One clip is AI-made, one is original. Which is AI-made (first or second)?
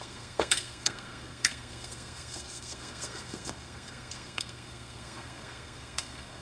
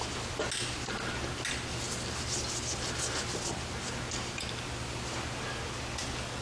first